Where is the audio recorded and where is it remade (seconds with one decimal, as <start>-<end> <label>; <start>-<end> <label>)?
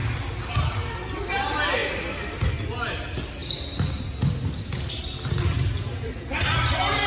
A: 0.0-0.5 remade; 0.5-7.1 recorded